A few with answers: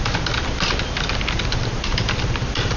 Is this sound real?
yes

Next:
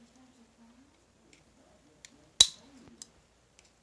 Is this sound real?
yes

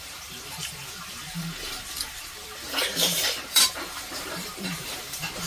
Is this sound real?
no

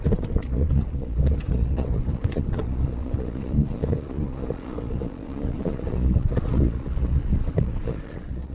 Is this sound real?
no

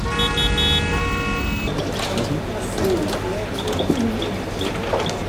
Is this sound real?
yes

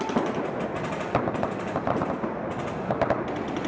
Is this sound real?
yes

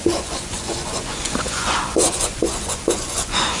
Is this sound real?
no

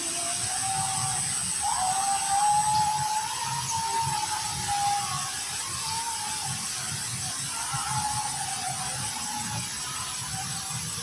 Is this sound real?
yes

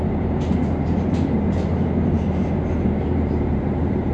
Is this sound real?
no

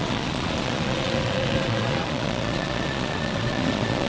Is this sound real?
no